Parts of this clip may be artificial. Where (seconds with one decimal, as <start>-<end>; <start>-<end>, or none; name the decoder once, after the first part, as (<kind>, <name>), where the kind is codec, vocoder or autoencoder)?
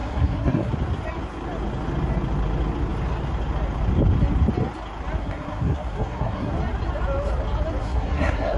0.0-0.7 (codec, SNAC); 5.2-6.5; 7.8-8.6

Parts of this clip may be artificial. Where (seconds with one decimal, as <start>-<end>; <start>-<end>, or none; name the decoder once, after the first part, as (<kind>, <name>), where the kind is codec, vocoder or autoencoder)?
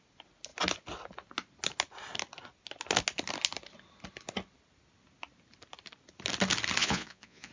6.8-7.5 (vocoder, Vocos)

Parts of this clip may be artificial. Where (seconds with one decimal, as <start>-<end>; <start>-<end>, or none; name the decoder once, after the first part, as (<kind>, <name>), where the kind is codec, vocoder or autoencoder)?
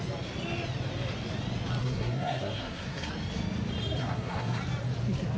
1.8-3.1 (codec, SNAC); 4.0-4.6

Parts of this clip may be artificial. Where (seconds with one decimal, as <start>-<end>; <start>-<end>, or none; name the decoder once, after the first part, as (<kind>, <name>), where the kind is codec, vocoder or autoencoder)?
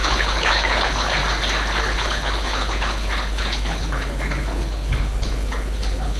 0.0-1.2 (codec, HILCodec); 1.8-6.2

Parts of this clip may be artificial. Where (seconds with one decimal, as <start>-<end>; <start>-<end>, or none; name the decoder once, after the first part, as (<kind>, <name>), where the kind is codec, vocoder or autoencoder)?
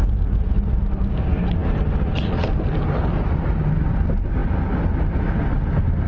none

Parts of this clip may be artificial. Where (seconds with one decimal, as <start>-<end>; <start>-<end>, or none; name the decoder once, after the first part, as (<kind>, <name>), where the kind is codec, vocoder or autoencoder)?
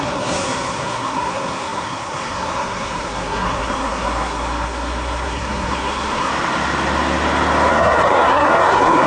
0.0-6.3 (codec, SNAC); 7.7-9.1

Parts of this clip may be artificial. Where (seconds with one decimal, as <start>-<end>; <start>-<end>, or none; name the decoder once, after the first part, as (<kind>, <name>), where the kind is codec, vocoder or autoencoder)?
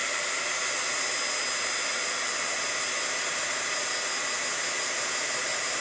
none